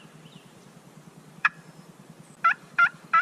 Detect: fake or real fake